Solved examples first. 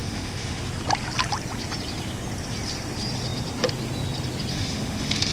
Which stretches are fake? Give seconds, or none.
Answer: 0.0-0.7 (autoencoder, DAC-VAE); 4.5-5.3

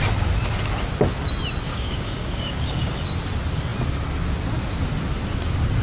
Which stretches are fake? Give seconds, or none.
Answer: 1.7-3.2 (codec, DAC)

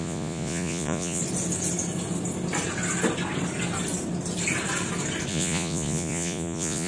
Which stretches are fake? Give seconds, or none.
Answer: 0.0-1.2 (vocoder, Vocos); 5.3-6.9

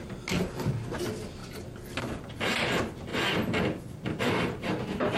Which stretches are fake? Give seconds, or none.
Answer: none

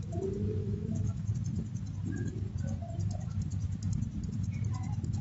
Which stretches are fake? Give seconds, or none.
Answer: 0.6-1.3 (autoencoder, DAC-VAE)

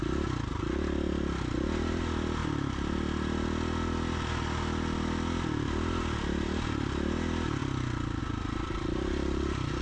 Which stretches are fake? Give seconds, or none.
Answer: none

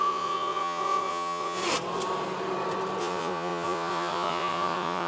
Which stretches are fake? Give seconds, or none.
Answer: 0.0-1.6 (vocoder, Vocos); 3.0-5.1